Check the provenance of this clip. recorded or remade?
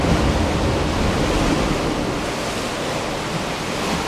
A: recorded